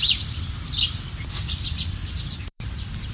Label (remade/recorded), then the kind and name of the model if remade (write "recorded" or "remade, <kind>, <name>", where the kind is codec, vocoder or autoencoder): remade, vocoder, BigVGAN v2